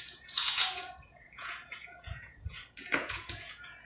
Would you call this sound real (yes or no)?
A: no